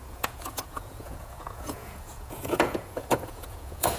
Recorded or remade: remade